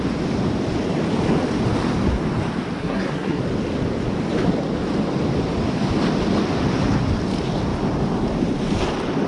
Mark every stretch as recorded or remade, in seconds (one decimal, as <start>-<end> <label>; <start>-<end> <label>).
0.0-2.8 recorded; 2.8-3.4 remade; 3.4-9.3 recorded